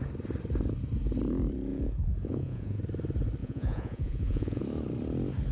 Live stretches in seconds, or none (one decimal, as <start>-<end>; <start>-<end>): 0.0-1.7; 2.8-3.4; 4.6-5.5